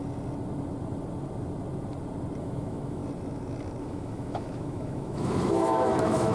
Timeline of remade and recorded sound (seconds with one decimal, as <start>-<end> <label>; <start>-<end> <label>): 0.0-2.4 recorded; 2.4-3.0 remade; 3.0-3.8 recorded; 3.8-6.3 remade